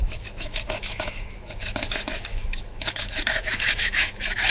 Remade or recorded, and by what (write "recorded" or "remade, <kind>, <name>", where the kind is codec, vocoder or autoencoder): remade, autoencoder, DAC-VAE